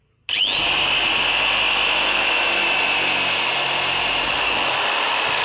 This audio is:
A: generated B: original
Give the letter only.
B